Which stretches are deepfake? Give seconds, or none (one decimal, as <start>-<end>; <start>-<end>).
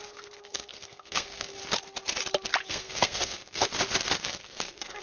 0.0-1.6; 2.7-3.7; 4.2-5.0